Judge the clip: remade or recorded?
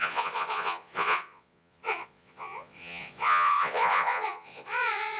remade